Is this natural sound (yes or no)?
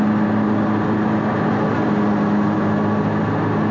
yes